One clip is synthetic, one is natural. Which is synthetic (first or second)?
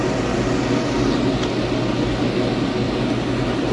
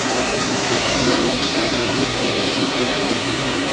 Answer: second